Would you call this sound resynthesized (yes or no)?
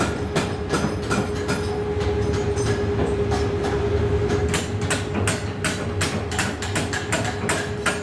no